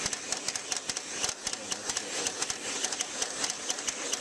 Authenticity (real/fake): real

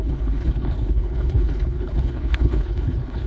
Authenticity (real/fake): fake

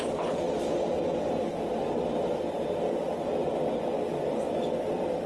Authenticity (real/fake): real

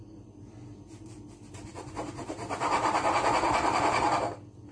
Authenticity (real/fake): real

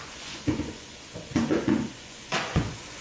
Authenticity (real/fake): fake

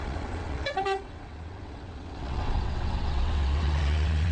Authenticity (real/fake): fake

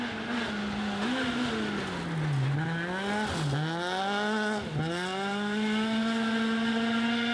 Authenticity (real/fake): real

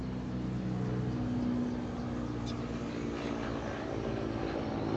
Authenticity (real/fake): real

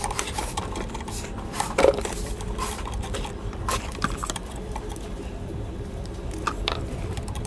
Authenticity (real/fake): fake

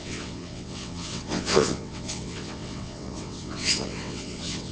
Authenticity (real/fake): fake